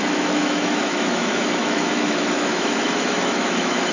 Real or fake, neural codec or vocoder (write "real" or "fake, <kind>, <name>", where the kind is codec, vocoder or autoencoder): fake, autoencoder, DAC-VAE